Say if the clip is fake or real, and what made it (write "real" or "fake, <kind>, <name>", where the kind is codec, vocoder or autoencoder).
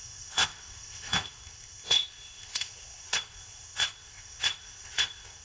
fake, codec, ZipCodec